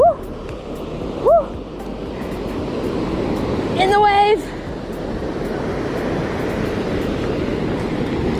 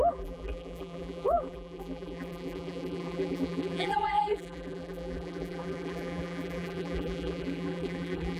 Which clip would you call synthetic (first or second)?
second